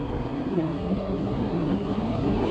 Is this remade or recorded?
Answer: remade